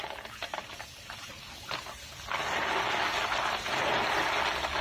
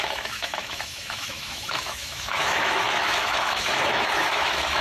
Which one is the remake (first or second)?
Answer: second